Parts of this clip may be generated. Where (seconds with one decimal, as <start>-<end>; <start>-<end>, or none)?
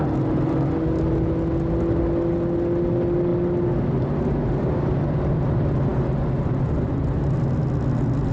none